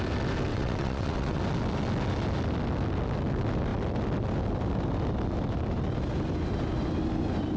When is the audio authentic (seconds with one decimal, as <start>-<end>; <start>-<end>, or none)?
0.0-0.5; 1.4-7.6

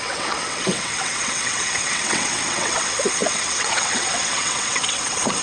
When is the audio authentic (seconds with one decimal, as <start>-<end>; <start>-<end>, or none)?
none

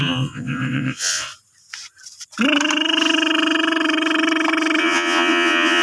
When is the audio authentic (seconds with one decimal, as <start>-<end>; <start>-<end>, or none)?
1.3-4.8

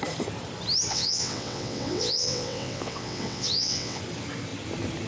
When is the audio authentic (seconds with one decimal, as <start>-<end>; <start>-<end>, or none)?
0.0-0.9; 4.0-5.1

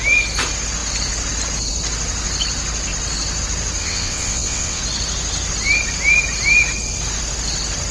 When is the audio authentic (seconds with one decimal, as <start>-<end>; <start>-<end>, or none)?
0.0-3.8; 4.8-7.9